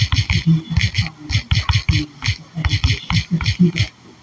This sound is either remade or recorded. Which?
recorded